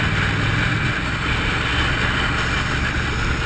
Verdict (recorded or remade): recorded